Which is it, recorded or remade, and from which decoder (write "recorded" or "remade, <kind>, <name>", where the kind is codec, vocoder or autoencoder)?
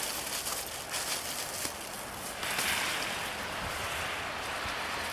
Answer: recorded